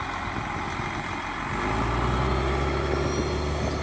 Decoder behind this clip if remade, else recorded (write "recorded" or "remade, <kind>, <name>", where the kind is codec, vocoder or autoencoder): recorded